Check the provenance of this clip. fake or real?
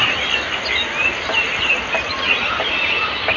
real